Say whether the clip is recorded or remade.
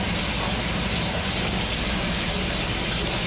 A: recorded